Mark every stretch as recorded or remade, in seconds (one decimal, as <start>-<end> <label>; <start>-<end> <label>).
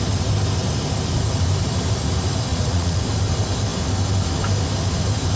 0.0-2.5 recorded; 2.5-3.0 remade; 3.0-5.4 recorded